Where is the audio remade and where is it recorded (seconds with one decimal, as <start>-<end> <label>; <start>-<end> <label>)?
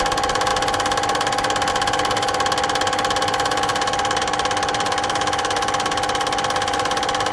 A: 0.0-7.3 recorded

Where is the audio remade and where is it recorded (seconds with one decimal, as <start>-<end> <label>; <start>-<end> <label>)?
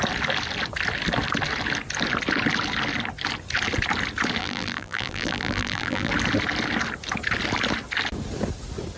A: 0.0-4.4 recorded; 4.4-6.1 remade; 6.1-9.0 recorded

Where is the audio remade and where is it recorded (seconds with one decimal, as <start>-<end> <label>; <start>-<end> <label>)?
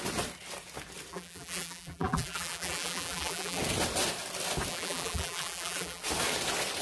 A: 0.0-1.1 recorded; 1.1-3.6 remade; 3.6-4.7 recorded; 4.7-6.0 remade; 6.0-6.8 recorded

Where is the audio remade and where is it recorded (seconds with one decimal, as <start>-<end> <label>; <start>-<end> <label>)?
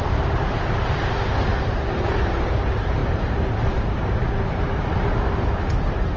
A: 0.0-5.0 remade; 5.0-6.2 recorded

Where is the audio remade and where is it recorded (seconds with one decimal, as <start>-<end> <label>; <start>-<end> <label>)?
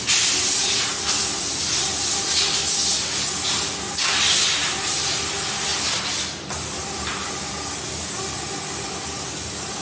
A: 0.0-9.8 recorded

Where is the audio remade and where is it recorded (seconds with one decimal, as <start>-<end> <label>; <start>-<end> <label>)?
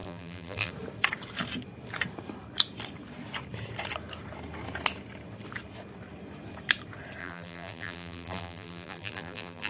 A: 0.0-0.7 remade; 0.7-7.2 recorded; 7.2-9.7 remade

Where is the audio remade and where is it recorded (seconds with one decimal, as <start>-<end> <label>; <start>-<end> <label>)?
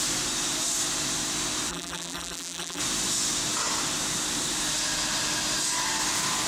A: 0.0-1.7 recorded; 1.7-2.8 remade; 2.8-6.5 recorded